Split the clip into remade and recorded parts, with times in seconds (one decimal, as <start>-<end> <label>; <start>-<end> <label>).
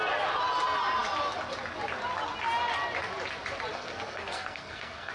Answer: 0.0-3.7 recorded; 3.7-5.1 remade